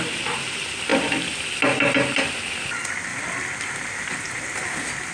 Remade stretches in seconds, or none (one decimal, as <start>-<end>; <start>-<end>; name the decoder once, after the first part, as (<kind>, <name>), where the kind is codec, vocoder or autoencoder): 0.9-1.6 (vocoder, BigVGAN v2); 3.1-3.7